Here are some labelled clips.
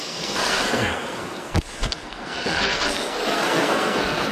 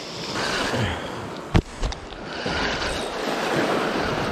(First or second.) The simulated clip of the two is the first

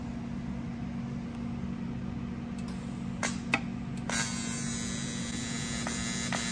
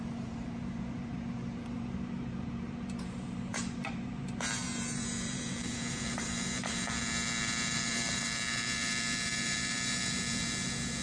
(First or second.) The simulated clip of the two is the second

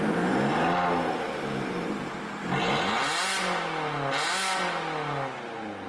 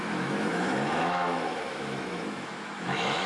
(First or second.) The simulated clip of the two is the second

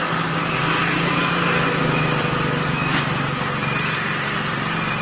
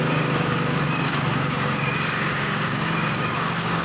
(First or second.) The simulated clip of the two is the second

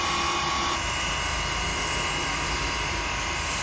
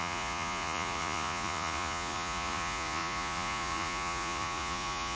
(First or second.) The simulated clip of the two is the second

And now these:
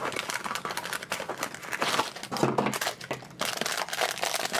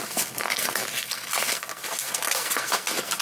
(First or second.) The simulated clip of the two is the second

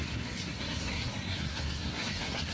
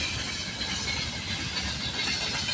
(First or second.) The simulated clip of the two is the first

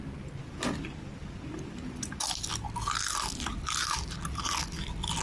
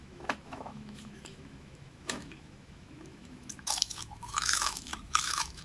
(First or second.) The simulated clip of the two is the second